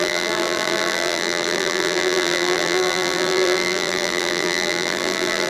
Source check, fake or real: fake